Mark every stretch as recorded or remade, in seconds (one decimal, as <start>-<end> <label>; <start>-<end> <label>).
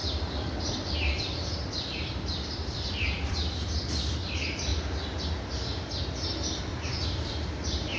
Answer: 0.0-4.7 remade; 4.7-6.6 recorded; 6.6-8.0 remade